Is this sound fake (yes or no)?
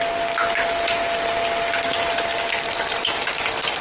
no